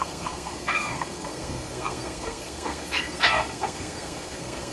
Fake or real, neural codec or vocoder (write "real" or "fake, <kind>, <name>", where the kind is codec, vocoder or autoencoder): fake, codec, SNAC